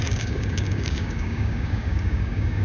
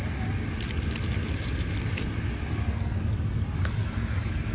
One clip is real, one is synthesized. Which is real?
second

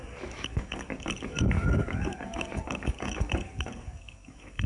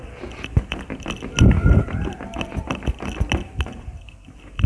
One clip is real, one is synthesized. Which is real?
second